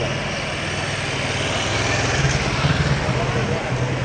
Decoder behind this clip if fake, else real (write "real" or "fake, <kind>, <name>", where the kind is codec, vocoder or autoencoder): real